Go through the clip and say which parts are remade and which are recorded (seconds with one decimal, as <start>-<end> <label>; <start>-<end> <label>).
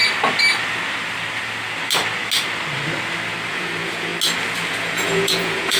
0.0-3.5 recorded; 3.5-4.1 remade; 4.1-4.7 recorded; 4.7-5.8 remade